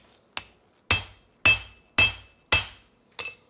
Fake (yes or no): no